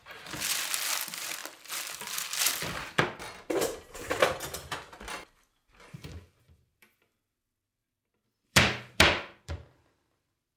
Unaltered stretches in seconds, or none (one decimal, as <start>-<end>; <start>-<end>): 0.0-7.8